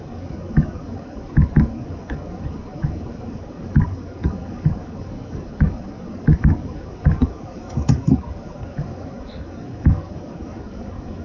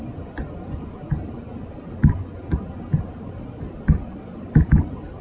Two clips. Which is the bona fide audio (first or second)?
second